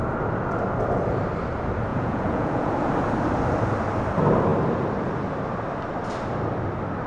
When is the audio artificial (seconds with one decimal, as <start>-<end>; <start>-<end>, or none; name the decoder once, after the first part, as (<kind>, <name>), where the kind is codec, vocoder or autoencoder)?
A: 1.9-2.9 (vocoder, Vocos)